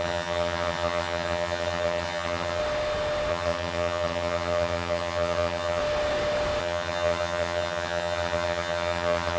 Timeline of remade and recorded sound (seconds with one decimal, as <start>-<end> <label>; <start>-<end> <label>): 0.0-2.6 remade; 2.6-3.3 recorded; 3.3-5.8 remade; 5.8-6.6 recorded; 6.6-9.4 remade